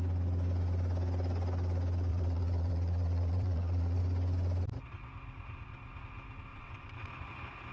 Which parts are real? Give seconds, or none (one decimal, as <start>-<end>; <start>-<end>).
0.0-2.1; 4.0-6.5; 7.1-7.7